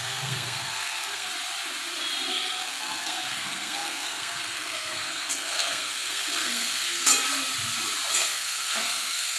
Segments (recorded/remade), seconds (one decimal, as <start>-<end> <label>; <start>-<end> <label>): 0.0-1.3 remade; 1.3-2.3 recorded; 2.3-7.1 remade; 7.1-8.1 recorded; 8.1-9.4 remade